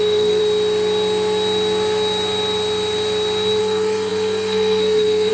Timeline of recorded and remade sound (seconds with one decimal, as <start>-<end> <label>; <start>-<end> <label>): 0.0-0.4 remade; 0.4-3.6 recorded; 3.6-5.3 remade